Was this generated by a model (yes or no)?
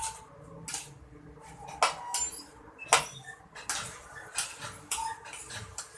no